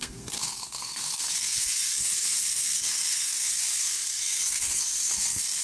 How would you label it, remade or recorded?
remade